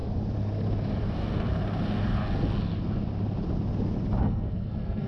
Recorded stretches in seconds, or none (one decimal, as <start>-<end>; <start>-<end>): 0.0-1.1; 1.5-4.2